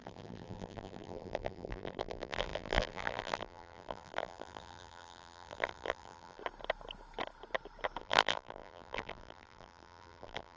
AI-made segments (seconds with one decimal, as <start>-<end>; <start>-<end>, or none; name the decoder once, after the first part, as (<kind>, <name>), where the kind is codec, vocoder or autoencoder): 0.0-6.4 (vocoder, BigVGAN v2); 8.0-10.6